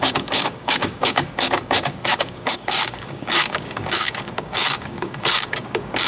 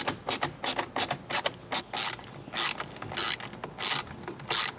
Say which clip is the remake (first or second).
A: first